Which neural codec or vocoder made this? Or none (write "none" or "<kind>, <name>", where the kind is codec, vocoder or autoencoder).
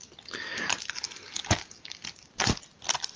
none